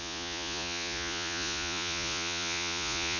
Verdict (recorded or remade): remade